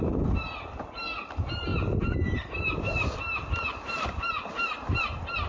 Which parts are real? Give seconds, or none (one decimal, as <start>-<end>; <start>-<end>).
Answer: 0.0-5.5